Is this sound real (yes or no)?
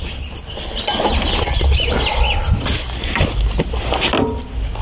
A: yes